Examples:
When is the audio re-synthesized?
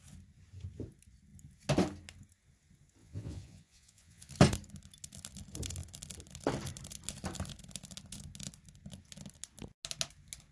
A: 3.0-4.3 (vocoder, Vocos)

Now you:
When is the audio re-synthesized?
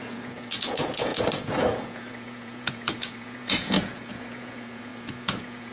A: 0.0-5.7 (vocoder, Vocos)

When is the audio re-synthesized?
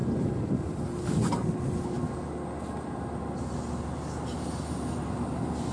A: none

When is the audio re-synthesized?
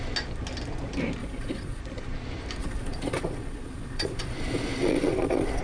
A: 1.2-1.8 (vocoder, Vocos); 2.6-5.6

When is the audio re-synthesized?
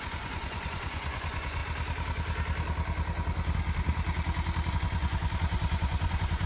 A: 0.0-1.6 (vocoder, Vocos); 4.7-6.5